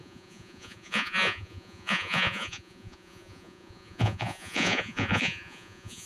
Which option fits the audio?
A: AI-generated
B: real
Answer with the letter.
A